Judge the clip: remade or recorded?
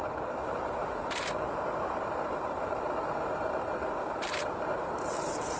remade